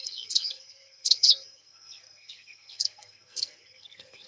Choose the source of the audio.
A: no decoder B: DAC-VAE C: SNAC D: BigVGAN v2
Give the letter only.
C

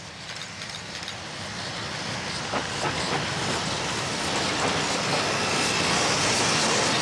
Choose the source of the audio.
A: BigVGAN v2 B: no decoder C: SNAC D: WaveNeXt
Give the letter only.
B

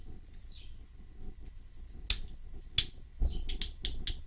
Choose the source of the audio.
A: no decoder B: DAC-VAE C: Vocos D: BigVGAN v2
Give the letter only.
A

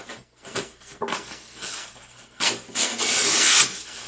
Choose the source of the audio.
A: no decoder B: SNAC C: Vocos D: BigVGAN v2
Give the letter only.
B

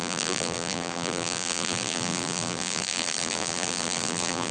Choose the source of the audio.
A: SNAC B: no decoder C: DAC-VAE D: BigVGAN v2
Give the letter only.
D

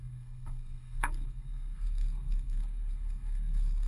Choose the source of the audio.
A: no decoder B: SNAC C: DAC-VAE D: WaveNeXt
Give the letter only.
B